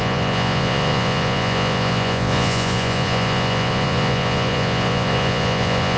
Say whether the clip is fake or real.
fake